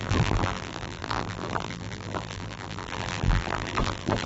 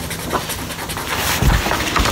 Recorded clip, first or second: second